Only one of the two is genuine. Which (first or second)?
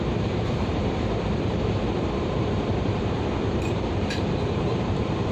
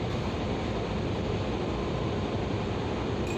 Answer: second